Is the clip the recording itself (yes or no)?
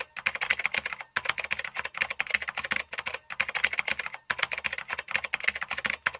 yes